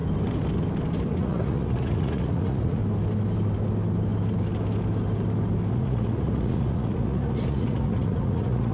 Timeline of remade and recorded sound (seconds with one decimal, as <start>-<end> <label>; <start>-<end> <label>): 0.0-1.1 recorded; 1.1-2.8 remade; 2.8-5.7 recorded; 5.7-8.7 remade